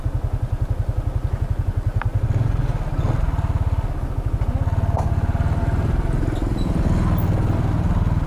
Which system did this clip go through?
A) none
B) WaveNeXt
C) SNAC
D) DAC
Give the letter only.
A